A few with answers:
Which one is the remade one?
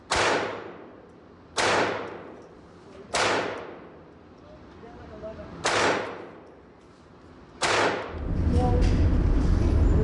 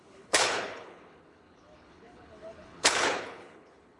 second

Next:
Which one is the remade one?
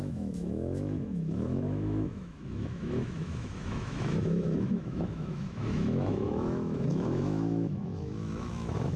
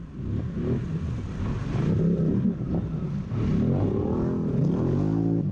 first